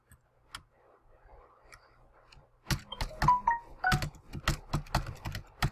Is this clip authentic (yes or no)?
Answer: yes